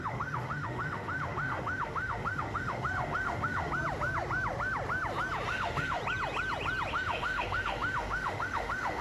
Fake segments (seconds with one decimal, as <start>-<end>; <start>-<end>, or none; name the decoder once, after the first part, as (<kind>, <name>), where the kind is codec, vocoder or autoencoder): 0.0-3.7 (autoencoder, DAC-VAE); 5.5-6.0; 6.9-9.0